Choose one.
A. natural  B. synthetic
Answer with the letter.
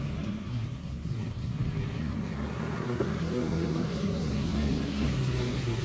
B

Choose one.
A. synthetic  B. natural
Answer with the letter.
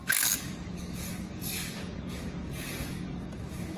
A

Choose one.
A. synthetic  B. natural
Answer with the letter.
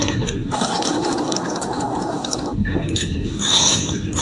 A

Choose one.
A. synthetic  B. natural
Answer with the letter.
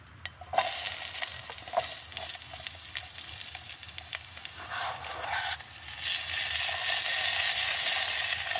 B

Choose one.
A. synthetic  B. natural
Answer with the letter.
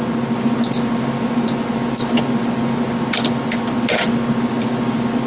B